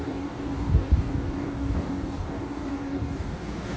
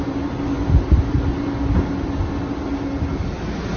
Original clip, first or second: second